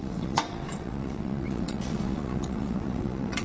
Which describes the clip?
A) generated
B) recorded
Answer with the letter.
A